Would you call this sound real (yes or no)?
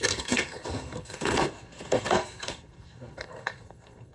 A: no